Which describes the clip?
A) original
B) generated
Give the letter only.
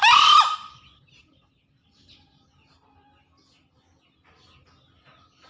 A